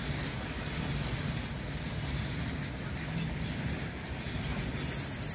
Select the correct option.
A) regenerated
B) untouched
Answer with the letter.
B